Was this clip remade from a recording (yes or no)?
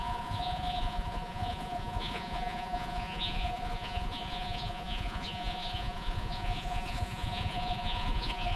yes